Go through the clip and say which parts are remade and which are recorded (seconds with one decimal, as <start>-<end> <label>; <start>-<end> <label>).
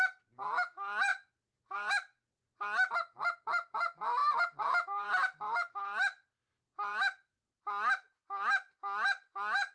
0.0-1.1 recorded; 1.1-1.9 remade; 1.9-4.2 recorded; 4.2-5.1 remade; 5.1-6.9 recorded; 6.9-7.4 remade; 7.4-9.7 recorded